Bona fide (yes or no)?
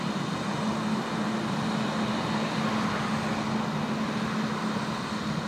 yes